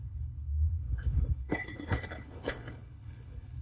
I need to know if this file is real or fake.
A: fake